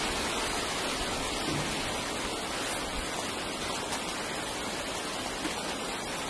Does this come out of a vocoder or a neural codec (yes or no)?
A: no